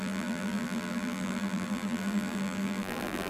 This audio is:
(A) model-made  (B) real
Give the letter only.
A